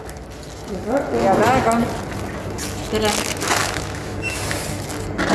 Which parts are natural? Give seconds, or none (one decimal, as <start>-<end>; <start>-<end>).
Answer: 0.0-3.6; 4.4-5.3